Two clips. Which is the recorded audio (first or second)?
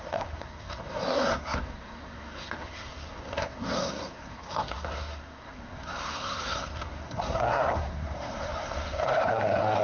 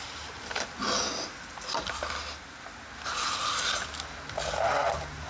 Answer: second